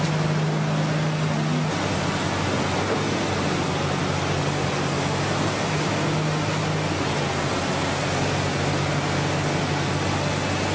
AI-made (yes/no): no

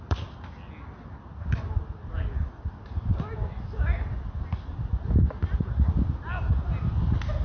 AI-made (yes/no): no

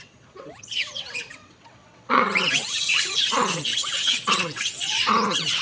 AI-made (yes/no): yes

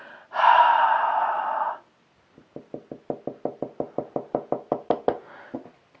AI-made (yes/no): no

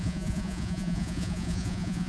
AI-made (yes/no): yes